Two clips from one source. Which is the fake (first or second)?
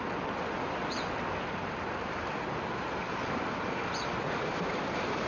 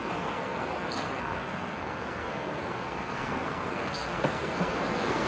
second